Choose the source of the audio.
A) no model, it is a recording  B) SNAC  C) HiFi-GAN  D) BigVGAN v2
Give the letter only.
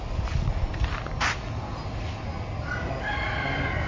A